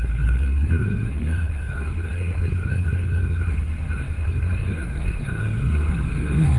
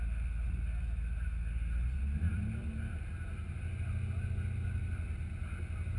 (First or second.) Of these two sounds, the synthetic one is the first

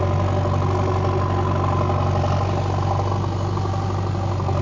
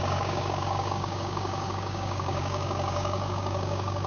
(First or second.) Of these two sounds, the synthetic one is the second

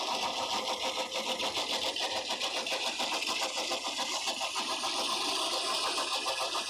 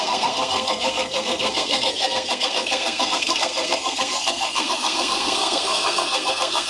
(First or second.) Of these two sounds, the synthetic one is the second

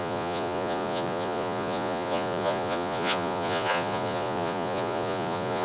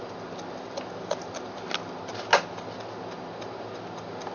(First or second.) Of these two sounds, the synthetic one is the first